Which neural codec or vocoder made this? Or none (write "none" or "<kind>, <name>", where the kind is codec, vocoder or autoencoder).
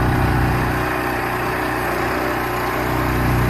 none